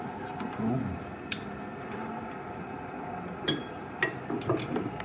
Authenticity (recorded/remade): recorded